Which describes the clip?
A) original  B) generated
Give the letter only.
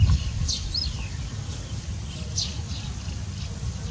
A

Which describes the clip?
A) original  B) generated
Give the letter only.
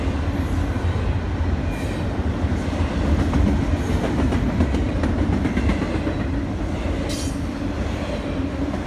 A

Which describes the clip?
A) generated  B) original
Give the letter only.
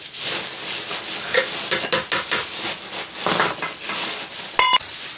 B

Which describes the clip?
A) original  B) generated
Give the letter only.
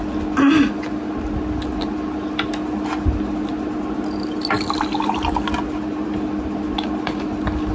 A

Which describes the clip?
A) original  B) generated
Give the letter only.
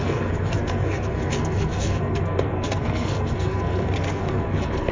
B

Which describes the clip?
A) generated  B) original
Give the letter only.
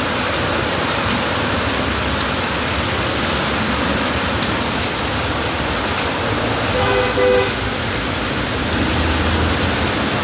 B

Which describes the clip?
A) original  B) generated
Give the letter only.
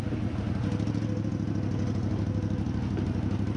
A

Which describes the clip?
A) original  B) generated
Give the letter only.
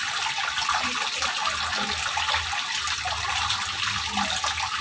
A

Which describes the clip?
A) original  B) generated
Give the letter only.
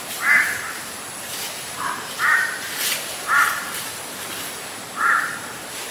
B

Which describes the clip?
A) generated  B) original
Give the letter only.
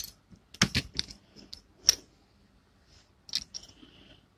B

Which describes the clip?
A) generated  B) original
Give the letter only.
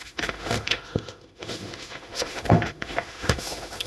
A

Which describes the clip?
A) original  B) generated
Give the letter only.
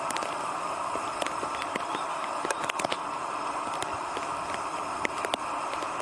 A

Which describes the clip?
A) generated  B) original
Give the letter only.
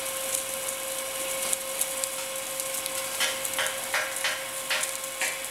B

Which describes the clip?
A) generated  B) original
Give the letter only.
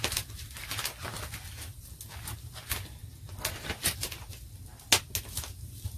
B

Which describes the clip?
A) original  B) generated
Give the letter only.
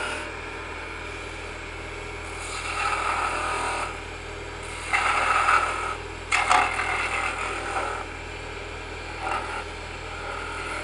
A